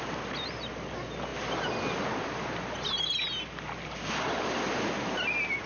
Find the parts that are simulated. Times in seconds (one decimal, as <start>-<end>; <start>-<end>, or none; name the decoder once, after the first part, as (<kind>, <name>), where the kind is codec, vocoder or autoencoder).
1.3-4.7 (vocoder, BigVGAN v2)